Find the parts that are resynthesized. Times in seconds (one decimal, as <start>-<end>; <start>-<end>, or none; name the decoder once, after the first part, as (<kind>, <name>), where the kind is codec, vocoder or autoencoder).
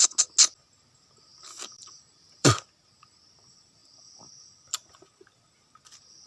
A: 1.3-2.7 (vocoder, BigVGAN v2); 3.8-4.9